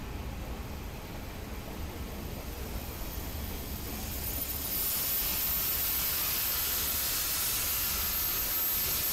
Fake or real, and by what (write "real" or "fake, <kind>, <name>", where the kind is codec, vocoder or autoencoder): real